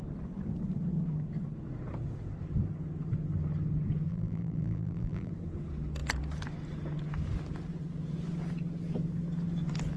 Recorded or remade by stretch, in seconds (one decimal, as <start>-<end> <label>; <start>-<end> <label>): 0.0-4.1 recorded; 4.1-5.3 remade; 5.3-10.0 recorded